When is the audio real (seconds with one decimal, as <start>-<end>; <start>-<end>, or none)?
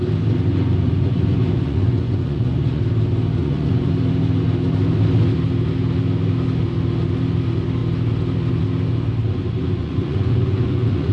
0.0-0.5; 2.8-3.4; 3.9-9.8